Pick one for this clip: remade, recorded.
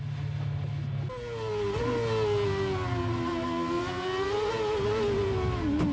recorded